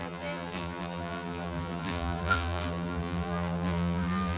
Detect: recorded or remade remade